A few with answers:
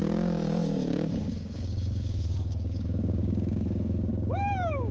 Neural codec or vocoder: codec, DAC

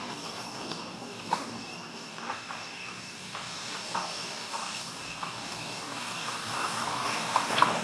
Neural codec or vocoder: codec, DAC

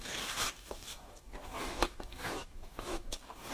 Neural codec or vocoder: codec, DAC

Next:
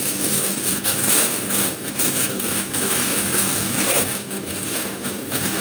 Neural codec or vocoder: codec, DAC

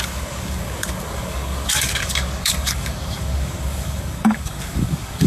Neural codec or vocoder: codec, DAC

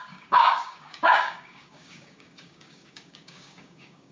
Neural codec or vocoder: codec, DAC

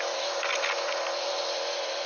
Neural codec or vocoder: none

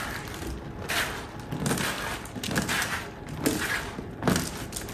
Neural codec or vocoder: none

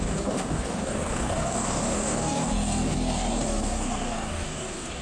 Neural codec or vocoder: codec, DAC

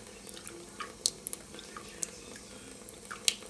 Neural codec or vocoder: none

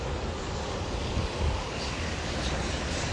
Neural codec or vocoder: codec, DAC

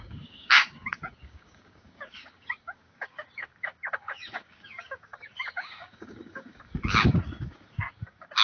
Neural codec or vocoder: codec, DAC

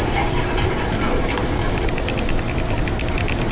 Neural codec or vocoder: none